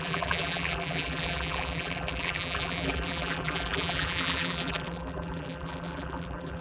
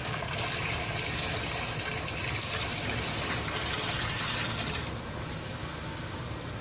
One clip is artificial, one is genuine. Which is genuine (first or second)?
second